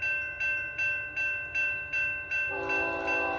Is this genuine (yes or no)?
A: yes